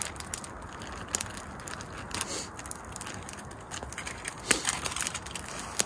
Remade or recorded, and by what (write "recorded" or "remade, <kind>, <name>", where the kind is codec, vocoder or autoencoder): recorded